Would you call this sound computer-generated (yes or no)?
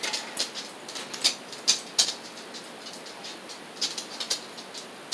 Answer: no